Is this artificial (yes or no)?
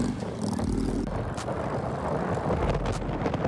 no